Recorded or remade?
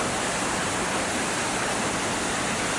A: recorded